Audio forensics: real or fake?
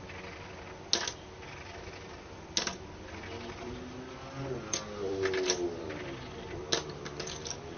real